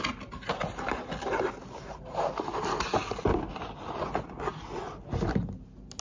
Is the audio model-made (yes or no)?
no